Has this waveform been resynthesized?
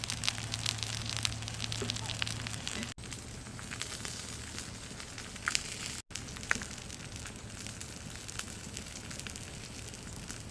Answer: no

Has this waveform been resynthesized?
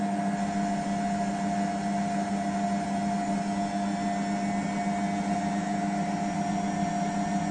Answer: no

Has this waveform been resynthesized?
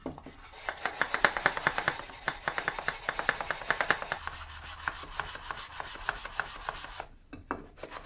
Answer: no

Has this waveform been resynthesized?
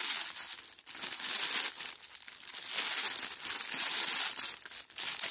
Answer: no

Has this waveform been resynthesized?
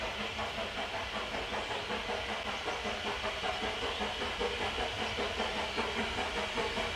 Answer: no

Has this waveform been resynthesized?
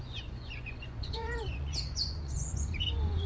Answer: yes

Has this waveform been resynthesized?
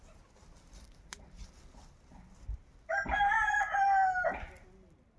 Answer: no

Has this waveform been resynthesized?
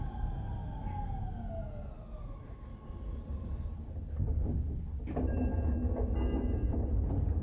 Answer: no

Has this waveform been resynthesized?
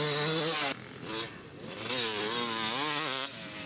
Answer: no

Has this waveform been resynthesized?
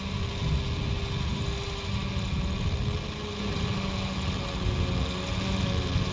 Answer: no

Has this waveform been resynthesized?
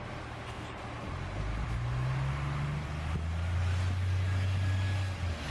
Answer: no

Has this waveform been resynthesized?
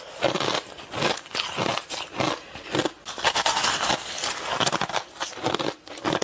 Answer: no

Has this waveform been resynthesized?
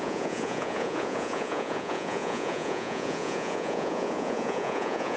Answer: yes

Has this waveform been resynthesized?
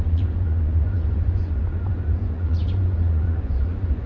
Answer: yes